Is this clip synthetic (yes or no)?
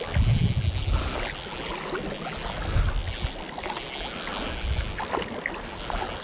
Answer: no